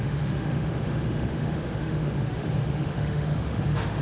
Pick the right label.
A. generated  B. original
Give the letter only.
A